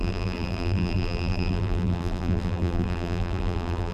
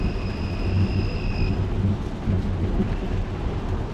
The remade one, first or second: first